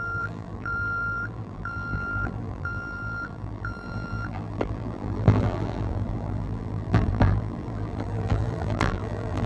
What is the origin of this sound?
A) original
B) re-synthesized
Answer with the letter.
B